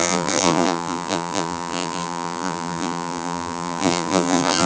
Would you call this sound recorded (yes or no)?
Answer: no